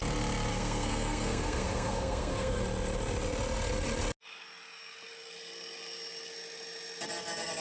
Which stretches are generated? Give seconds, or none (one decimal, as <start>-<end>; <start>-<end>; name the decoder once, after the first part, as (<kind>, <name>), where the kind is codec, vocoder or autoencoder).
0.5-2.6 (codec, SNAC)